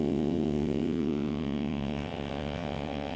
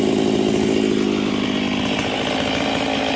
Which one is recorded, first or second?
second